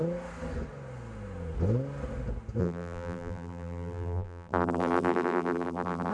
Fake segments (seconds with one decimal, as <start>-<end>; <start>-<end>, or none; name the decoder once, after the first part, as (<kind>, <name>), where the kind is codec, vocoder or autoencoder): 2.6-6.1 (vocoder, BigVGAN v2)